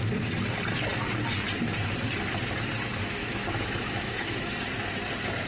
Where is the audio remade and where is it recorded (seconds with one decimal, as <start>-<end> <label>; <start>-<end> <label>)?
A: 0.0-3.2 recorded; 3.2-4.6 remade; 4.6-5.5 recorded